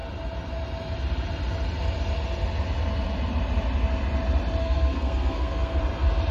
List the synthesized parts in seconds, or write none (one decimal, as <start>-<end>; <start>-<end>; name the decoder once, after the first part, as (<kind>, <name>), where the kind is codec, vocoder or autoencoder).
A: 4.6-5.8 (codec, SNAC)